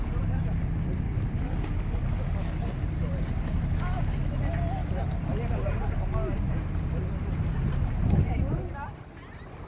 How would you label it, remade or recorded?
recorded